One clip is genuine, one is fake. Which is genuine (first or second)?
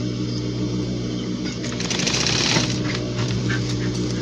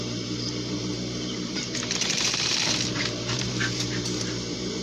first